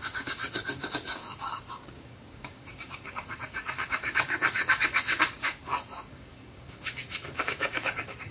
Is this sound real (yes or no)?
no